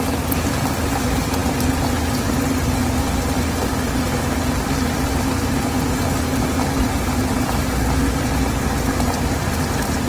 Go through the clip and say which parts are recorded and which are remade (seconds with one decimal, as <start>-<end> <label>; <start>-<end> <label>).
0.0-10.1 recorded